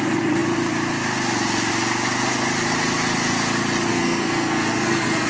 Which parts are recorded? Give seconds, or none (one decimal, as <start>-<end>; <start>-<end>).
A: 0.0-3.9